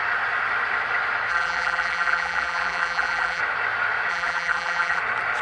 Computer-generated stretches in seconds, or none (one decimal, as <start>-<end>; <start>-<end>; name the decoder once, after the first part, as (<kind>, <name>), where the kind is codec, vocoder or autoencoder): 1.3-3.4 (vocoder, BigVGAN v2); 4.1-5.0